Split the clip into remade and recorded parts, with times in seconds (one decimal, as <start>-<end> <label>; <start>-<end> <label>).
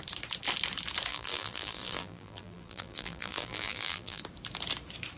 0.0-1.1 recorded; 1.1-4.2 remade; 4.2-5.2 recorded